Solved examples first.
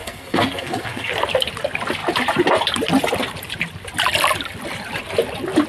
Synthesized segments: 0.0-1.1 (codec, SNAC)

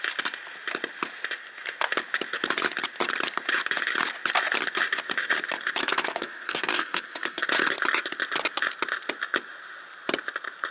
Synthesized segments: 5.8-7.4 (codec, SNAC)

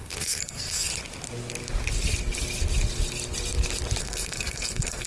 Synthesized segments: 0.0-0.9 (codec, SNAC); 4.0-5.1

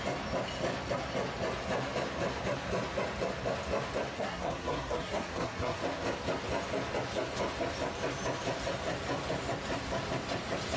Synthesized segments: 4.1-5.8 (codec, SNAC)

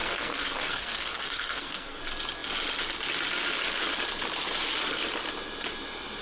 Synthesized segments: 0.0-2.0 (codec, SNAC)